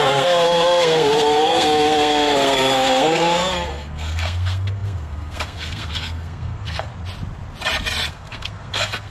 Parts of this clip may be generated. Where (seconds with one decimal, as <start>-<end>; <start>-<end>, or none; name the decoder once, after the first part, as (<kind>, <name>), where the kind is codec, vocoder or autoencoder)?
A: 0.0-6.9 (codec, SNAC); 8.1-9.1